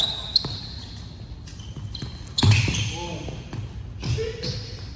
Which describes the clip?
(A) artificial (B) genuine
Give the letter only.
B